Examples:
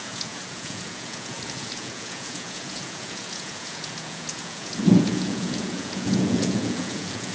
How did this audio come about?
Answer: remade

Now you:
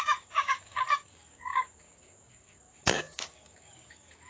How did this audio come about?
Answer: remade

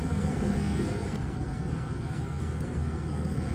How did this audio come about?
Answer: remade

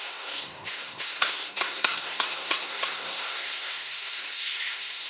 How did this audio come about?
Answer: remade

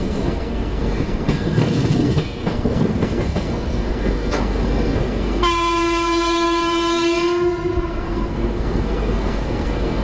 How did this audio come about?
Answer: remade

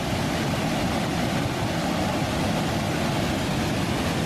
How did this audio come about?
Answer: recorded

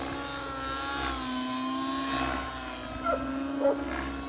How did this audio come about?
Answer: recorded